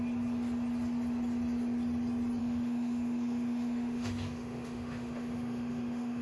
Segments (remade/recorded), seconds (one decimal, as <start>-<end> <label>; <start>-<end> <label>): 0.0-2.4 recorded; 2.4-6.2 remade